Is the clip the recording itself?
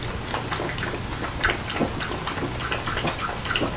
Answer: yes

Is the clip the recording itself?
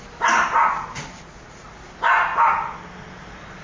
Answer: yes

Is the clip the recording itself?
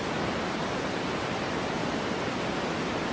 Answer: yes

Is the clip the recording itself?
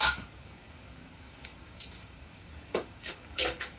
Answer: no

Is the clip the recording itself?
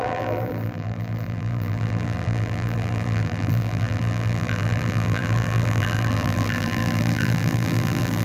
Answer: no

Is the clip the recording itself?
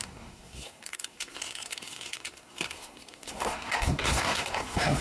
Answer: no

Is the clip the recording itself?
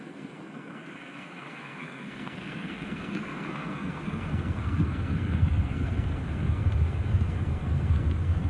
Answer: no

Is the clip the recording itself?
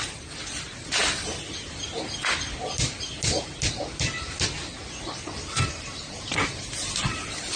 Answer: yes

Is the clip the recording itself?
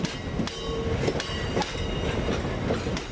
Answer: yes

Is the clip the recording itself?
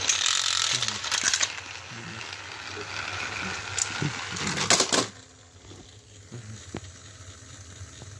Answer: yes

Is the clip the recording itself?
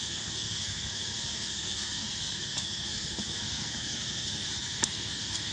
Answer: no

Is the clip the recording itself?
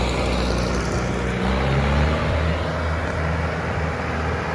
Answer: yes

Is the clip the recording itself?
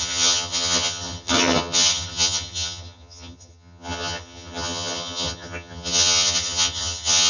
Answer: no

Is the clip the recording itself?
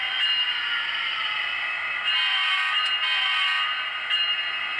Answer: yes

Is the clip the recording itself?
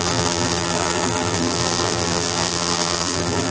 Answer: no